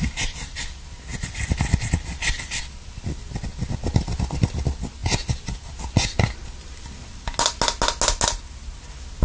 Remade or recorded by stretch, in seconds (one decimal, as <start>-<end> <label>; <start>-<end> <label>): 0.0-1.1 recorded; 1.1-2.6 remade; 2.6-9.2 recorded